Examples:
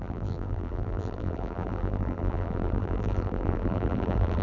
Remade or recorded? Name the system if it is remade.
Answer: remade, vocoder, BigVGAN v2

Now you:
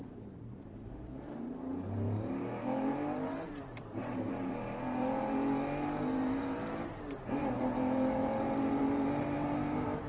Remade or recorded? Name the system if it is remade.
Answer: remade, vocoder, BigVGAN v2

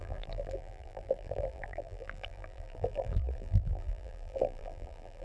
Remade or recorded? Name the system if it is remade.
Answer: remade, vocoder, BigVGAN v2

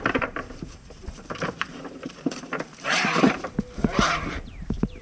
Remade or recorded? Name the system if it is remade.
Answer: remade, vocoder, BigVGAN v2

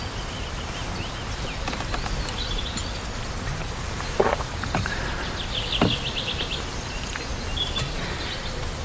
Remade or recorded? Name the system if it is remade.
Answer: recorded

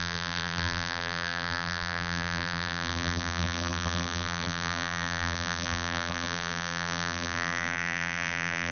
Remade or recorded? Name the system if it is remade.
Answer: remade, vocoder, BigVGAN v2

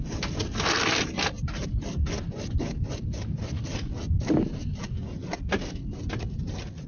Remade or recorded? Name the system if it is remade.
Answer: recorded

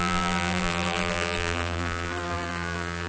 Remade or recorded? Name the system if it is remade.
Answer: remade, vocoder, BigVGAN v2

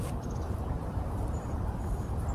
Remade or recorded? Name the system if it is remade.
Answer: remade, vocoder, BigVGAN v2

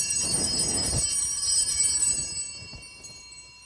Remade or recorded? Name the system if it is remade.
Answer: remade, vocoder, BigVGAN v2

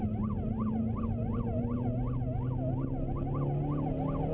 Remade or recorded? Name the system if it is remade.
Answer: recorded